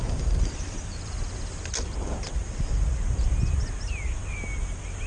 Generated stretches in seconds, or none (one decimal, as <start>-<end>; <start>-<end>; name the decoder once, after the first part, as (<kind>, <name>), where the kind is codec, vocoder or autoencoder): none